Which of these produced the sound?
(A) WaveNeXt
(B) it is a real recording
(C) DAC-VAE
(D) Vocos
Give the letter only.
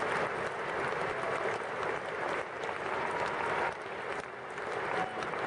B